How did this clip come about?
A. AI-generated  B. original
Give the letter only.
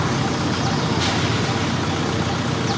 B